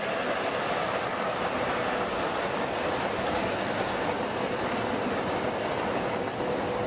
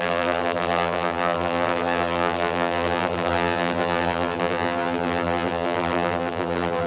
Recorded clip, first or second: first